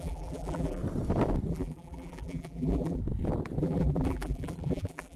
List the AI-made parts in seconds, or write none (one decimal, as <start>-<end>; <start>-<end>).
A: 0.0-0.8; 1.5-3.0; 3.6-5.2